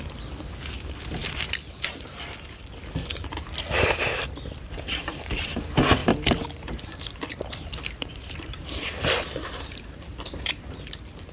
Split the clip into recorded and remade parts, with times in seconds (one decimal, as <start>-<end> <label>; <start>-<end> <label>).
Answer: 0.0-1.2 recorded; 1.2-2.1 remade; 2.1-6.0 recorded; 6.0-10.9 remade; 10.9-11.3 recorded